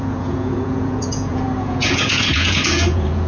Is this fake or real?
fake